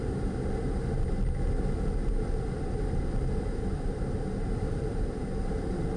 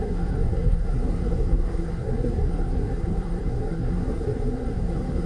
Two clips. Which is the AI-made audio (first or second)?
second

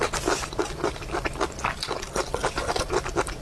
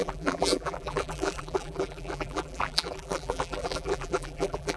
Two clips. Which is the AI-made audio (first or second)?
second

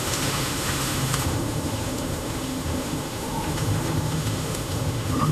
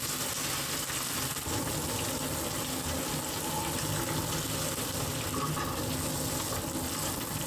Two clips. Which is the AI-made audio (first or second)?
first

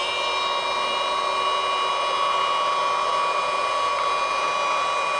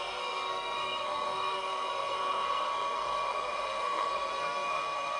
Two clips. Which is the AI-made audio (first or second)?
second